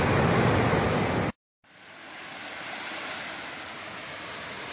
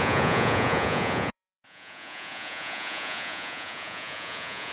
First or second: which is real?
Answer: first